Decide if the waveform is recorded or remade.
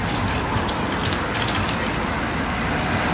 recorded